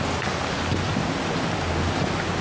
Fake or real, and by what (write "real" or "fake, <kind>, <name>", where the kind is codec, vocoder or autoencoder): real